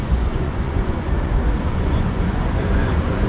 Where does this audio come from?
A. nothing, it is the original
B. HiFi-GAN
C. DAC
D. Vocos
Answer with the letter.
D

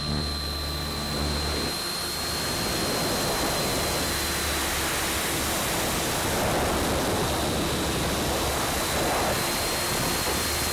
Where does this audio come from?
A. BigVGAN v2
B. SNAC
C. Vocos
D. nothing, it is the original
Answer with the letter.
D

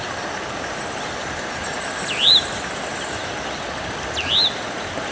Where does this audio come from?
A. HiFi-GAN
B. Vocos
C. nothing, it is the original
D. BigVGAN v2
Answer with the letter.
D